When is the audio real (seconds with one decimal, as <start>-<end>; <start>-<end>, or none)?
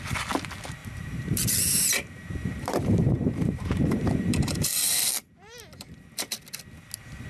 0.0-0.8; 5.1-7.3